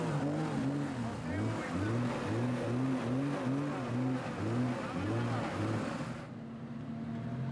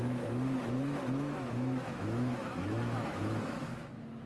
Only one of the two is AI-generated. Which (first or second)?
second